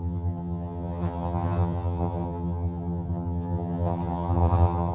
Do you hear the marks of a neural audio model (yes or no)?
yes